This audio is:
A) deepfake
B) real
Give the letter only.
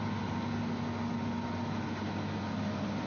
B